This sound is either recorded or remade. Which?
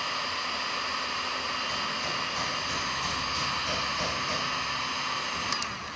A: recorded